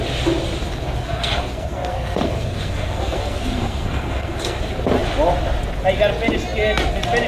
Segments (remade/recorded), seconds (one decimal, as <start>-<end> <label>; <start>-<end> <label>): 0.0-1.0 recorded; 1.0-4.6 remade; 4.6-7.3 recorded